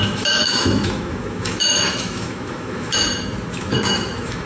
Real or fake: fake